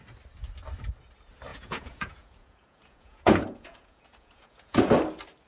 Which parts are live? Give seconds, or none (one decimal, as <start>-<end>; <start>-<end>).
0.0-1.5; 4.8-5.5